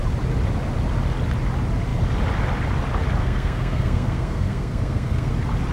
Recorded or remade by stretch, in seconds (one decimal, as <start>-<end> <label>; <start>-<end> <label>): 0.0-3.2 recorded; 3.2-5.3 remade; 5.3-5.7 recorded